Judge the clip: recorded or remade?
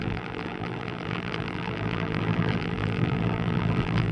remade